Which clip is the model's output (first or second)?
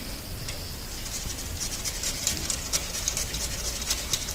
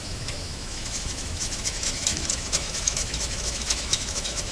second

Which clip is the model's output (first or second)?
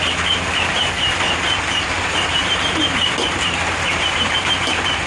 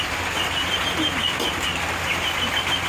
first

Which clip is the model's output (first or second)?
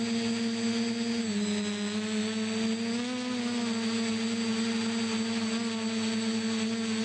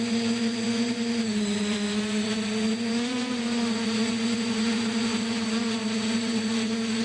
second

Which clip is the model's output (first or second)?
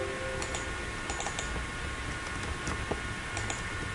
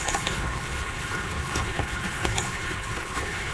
second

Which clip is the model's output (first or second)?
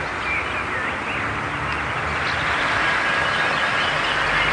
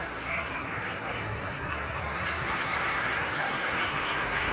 second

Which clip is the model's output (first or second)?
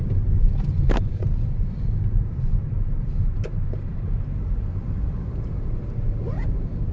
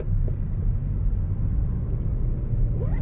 first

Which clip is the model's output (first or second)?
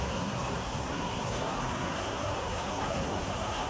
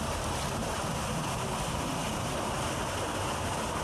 first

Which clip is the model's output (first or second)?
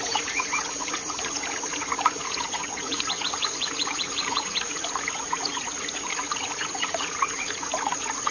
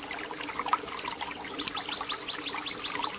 first